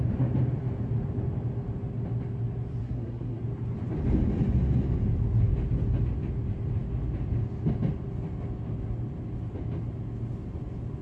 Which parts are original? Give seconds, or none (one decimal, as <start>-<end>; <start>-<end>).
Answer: 0.0-2.8; 3.4-11.0